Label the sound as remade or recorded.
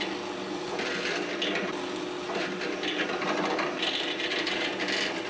recorded